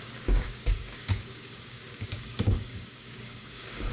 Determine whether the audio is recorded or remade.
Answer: remade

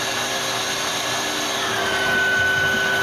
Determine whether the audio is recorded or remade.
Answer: recorded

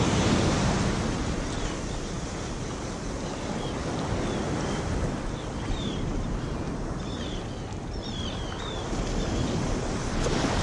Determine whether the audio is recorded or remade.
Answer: recorded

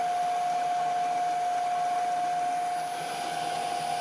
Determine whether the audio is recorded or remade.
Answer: recorded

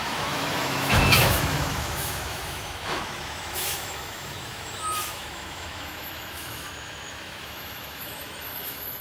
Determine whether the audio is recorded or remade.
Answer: remade